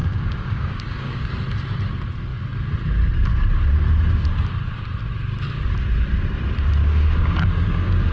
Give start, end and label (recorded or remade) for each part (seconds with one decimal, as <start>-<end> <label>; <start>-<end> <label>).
0.0-1.3 remade; 1.3-6.8 recorded; 6.8-8.1 remade